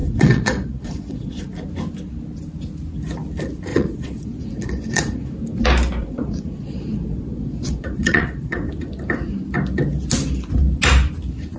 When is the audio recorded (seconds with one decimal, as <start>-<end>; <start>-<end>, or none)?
1.4-3.7; 5.3-6.0; 8.7-11.6